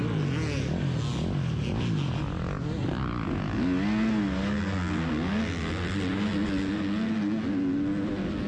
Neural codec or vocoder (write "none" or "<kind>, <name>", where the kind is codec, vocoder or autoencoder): none